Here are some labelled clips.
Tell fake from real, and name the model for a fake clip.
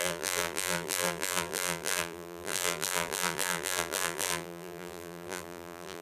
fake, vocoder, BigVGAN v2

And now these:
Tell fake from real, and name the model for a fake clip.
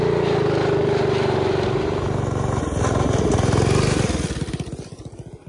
real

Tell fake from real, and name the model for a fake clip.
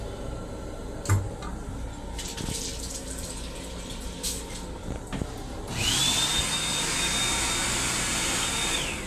real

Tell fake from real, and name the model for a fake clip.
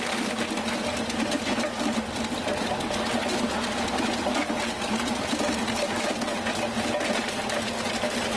fake, vocoder, BigVGAN v2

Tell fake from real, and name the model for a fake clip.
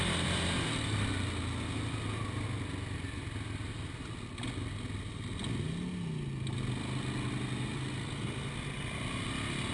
real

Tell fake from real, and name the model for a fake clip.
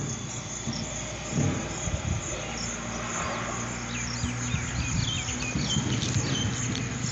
real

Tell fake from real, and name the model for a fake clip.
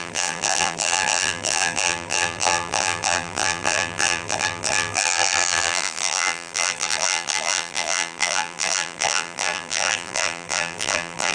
fake, vocoder, BigVGAN v2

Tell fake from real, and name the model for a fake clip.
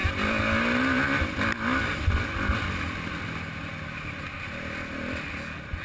real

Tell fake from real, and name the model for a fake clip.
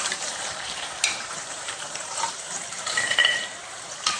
fake, vocoder, BigVGAN v2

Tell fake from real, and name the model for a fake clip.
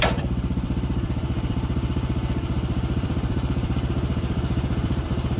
fake, vocoder, BigVGAN v2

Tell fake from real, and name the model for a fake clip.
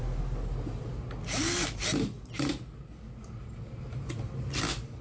real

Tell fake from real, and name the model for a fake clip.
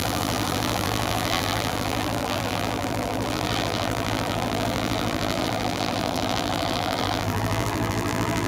fake, vocoder, BigVGAN v2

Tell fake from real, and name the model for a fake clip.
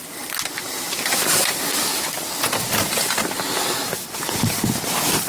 real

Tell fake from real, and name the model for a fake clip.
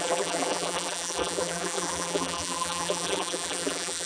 fake, vocoder, BigVGAN v2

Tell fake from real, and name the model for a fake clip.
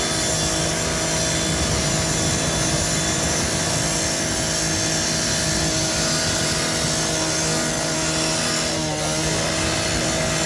real